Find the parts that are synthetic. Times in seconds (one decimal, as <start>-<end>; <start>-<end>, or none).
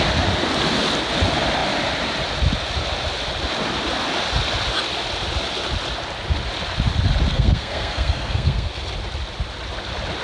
7.3-8.7